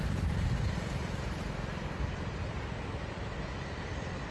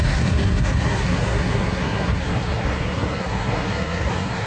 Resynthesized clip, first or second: second